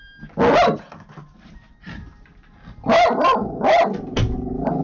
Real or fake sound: real